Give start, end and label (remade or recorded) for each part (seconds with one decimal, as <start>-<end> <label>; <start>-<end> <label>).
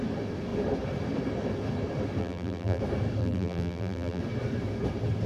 0.0-2.2 recorded; 2.2-2.8 remade; 2.8-3.2 recorded; 3.2-4.2 remade; 4.2-5.3 recorded